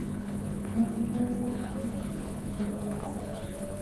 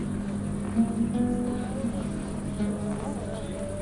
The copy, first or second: first